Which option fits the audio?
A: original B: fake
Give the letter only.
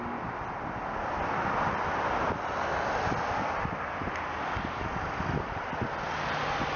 A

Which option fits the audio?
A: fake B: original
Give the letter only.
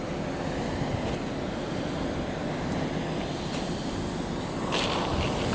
B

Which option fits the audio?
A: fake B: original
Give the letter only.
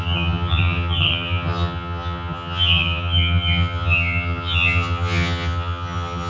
A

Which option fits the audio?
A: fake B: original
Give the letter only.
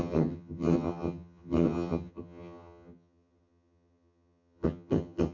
A